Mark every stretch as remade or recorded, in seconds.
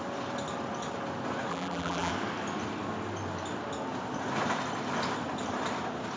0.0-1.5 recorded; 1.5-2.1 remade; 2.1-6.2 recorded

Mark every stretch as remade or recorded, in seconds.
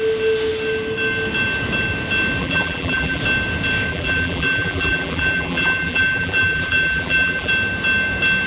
0.0-2.4 recorded; 2.4-3.2 remade; 3.2-3.9 recorded; 3.9-7.5 remade; 7.5-8.5 recorded